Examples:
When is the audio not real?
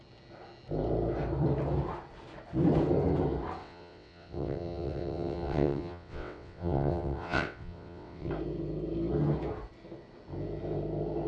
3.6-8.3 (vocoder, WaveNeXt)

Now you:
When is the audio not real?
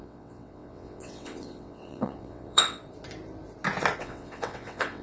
0.0-2.8 (vocoder, WaveNeXt); 4.0-5.0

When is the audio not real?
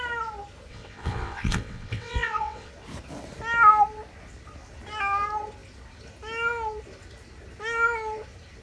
0.7-2.7 (vocoder, WaveNeXt)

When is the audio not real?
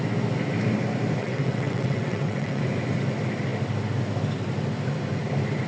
1.2-2.6 (vocoder, WaveNeXt)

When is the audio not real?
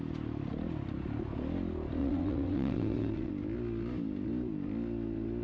2.0-3.3 (vocoder, WaveNeXt)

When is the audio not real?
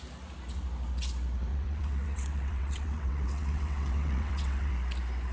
1.5-4.7 (vocoder, WaveNeXt)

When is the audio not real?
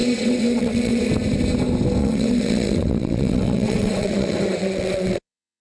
0.0-1.0 (vocoder, WaveNeXt); 2.0-5.6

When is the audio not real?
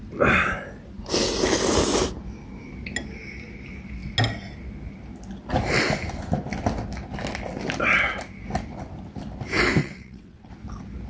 9.8-10.5 (vocoder, WaveNeXt)